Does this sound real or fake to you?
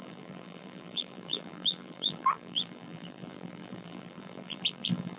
fake